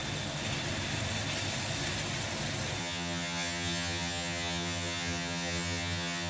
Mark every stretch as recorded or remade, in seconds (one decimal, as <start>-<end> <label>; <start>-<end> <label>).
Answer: 0.0-2.8 recorded; 2.8-6.3 remade

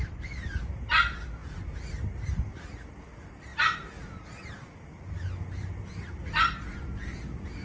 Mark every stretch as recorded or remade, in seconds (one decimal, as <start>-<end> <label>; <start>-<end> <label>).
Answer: 0.0-7.6 recorded

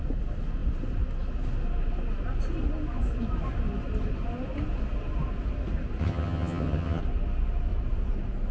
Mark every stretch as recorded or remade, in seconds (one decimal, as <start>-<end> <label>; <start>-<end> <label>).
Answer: 0.0-6.0 recorded; 6.0-7.0 remade; 7.0-8.5 recorded

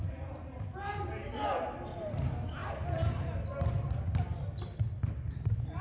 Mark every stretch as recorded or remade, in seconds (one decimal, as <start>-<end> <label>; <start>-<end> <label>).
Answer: 0.0-5.8 recorded

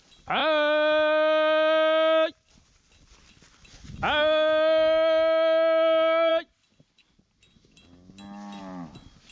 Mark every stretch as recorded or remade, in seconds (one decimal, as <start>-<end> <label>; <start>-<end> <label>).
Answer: 0.0-9.3 recorded

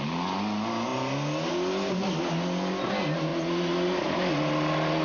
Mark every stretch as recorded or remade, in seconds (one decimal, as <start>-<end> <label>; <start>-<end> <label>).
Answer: 0.0-5.0 recorded

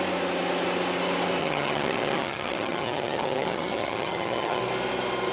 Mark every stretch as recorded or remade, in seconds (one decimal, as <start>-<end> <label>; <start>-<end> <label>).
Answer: 0.0-1.4 recorded; 1.4-4.6 remade; 4.6-5.3 recorded